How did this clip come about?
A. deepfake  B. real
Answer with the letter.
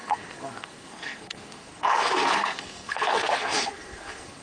A